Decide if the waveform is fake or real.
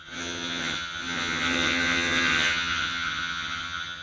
fake